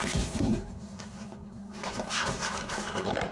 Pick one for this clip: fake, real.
fake